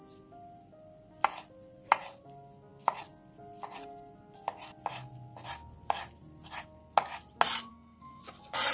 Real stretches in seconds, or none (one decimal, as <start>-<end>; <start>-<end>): 0.0-7.7; 8.2-8.7